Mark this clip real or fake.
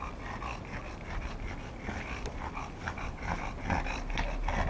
real